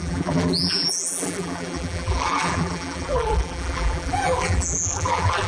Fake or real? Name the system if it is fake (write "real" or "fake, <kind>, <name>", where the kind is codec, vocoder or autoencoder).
fake, vocoder, BigVGAN v2